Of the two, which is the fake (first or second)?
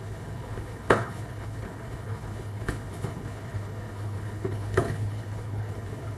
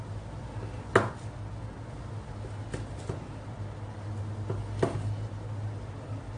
first